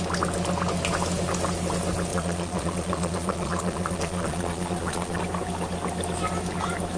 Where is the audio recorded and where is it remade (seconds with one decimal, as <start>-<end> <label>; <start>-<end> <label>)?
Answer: 0.0-2.1 recorded; 2.1-5.2 remade; 5.2-7.0 recorded